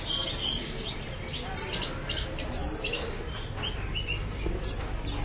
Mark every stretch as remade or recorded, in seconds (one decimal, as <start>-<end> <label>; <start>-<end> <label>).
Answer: 0.0-5.2 recorded